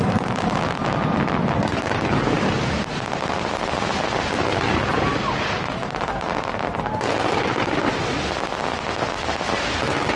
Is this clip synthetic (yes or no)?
no